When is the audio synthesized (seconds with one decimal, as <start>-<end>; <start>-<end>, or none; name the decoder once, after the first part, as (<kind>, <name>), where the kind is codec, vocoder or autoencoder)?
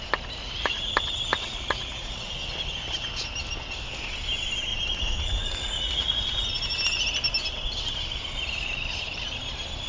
0.4-0.9 (vocoder, Vocos); 1.3-2.3; 4.7-6.5